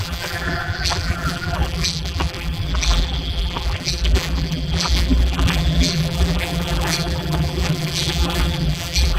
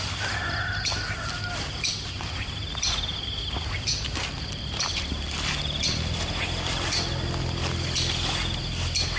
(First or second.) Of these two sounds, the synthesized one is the first